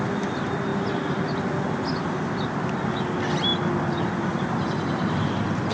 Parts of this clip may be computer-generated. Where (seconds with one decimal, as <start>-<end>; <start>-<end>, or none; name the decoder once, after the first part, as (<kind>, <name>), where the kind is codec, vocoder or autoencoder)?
none